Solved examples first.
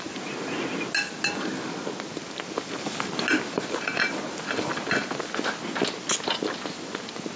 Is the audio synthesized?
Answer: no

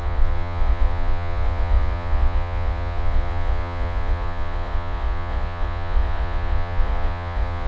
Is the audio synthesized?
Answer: yes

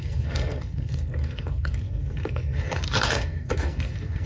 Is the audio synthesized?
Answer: yes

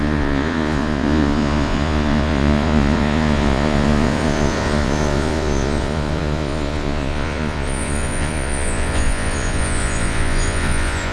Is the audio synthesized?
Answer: yes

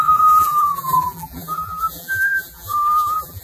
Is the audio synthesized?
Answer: yes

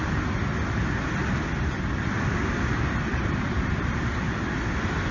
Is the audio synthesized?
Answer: no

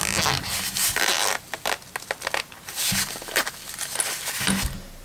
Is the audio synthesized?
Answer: no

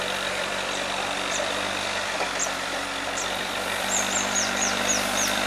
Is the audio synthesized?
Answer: yes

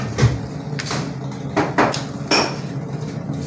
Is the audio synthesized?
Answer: no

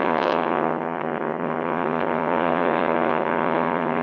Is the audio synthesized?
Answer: yes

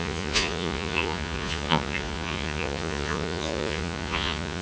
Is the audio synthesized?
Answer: yes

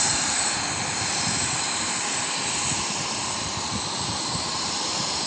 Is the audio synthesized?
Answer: yes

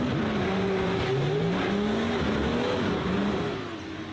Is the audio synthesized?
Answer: no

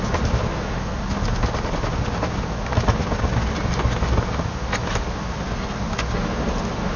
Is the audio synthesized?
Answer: no